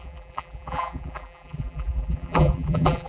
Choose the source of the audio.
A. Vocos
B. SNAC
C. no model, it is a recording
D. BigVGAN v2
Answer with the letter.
D